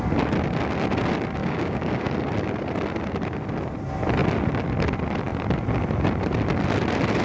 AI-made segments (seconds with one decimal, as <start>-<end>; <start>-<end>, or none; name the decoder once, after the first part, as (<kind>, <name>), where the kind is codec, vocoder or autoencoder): 1.4-2.1 (codec, DAC)